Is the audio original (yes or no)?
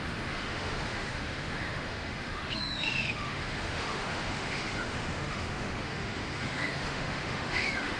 no